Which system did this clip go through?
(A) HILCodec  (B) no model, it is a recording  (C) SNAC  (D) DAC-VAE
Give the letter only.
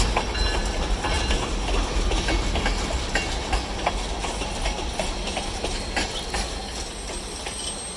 B